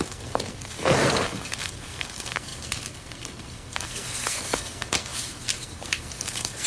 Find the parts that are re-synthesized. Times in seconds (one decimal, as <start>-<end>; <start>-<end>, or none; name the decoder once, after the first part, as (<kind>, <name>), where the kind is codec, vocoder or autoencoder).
0.0-6.7 (codec, SNAC)